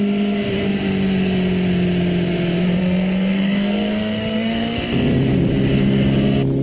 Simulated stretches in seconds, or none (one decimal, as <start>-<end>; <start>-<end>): 2.8-4.8